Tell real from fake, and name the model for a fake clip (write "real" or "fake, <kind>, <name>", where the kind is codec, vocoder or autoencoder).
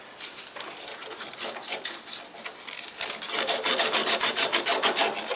real